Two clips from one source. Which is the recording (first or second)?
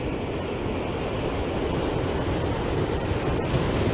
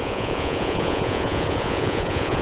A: first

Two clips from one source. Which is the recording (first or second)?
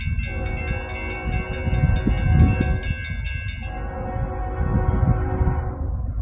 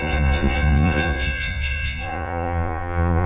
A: first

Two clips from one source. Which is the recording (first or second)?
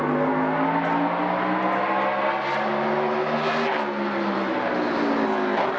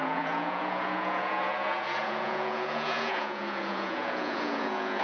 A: first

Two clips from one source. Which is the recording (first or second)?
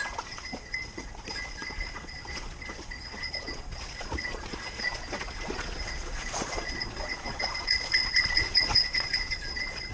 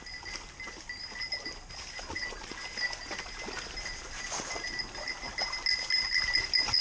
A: second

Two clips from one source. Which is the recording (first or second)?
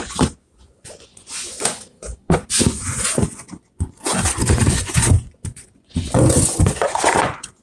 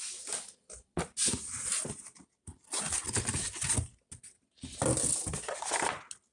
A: second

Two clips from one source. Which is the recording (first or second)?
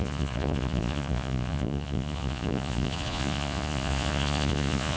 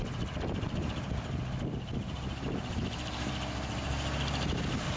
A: second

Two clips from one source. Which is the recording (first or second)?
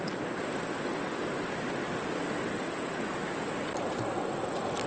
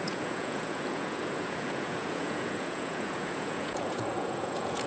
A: first